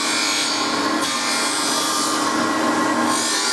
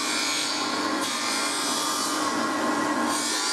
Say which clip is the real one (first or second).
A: first